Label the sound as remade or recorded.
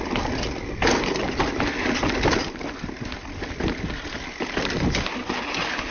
recorded